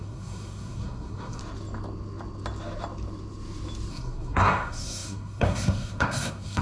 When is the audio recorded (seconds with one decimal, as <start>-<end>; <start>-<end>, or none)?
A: 1.4-3.9